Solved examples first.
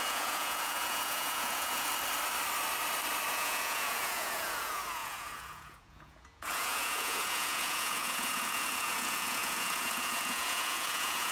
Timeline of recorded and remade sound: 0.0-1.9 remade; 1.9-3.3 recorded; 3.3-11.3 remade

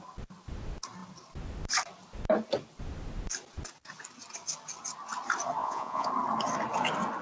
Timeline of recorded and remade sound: 0.0-5.6 recorded; 5.6-6.1 remade; 6.1-7.2 recorded

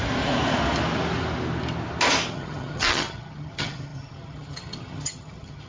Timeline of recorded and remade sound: 0.0-2.3 recorded; 2.3-5.7 remade